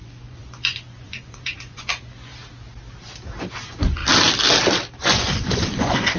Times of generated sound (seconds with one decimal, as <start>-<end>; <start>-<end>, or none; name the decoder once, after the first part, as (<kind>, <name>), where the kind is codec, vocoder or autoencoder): 0.0-2.3 (vocoder, Vocos); 3.6-4.0; 5.0-6.2